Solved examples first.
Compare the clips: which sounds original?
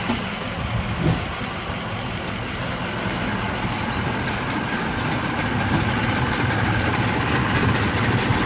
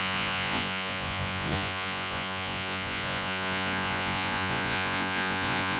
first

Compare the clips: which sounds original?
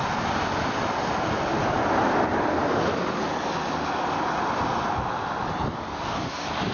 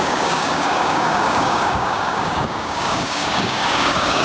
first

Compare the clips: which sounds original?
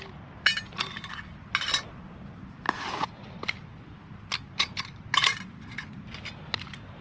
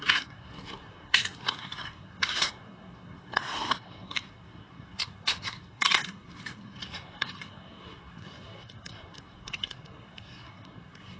first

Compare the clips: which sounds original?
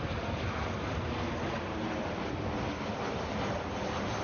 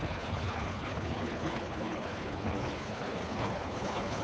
first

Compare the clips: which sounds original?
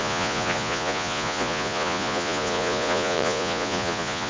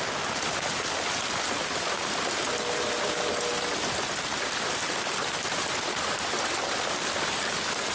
second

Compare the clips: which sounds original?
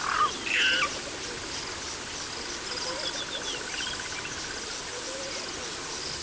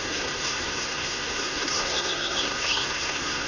first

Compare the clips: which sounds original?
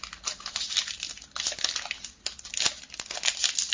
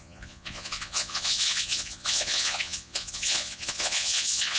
first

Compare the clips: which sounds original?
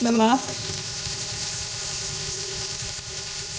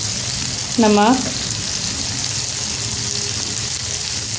second